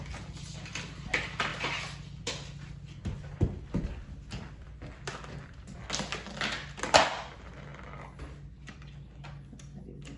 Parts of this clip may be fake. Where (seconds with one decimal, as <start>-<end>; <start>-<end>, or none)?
none